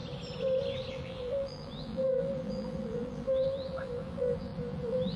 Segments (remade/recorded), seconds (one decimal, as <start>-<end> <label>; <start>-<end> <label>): 0.0-0.9 recorded; 0.9-5.2 remade